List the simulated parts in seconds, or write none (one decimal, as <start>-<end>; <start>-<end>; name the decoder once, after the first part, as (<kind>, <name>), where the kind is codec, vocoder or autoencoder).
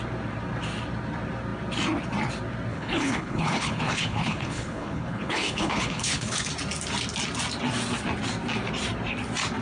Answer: 2.7-6.5 (codec, HILCodec)